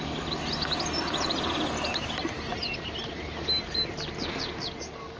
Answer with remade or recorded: recorded